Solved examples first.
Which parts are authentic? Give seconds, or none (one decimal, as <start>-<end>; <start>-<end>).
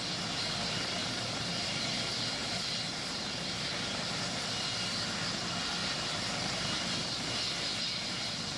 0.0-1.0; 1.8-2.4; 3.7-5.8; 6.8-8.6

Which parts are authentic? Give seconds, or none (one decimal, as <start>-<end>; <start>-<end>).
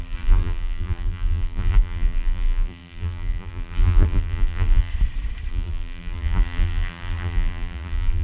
4.9-5.5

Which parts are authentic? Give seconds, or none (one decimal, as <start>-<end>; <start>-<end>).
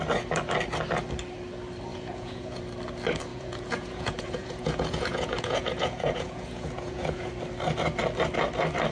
0.0-1.9; 2.6-3.3; 7.3-8.9